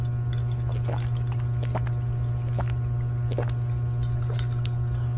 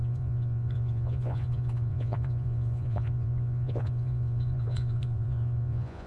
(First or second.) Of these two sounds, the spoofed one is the second